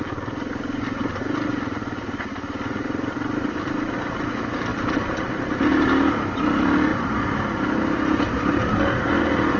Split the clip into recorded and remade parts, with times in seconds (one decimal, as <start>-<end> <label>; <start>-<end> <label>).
0.0-9.6 recorded